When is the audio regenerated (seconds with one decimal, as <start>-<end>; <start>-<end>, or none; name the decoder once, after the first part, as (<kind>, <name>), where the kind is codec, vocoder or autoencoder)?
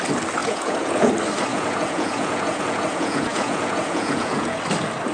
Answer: 0.4-1.1 (vocoder, Vocos); 1.5-4.6